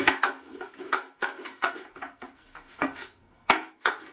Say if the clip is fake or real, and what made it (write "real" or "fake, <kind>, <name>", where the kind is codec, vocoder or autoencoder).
fake, codec, SNAC